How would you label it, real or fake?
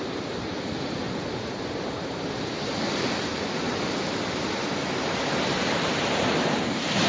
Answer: fake